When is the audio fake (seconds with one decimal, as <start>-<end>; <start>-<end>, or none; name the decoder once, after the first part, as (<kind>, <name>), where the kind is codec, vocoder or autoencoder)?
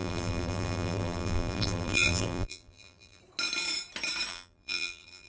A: 0.0-3.2 (vocoder, BigVGAN v2); 4.3-5.3